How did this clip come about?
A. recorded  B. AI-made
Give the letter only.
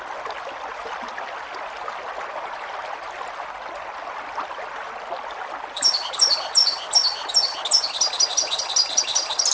A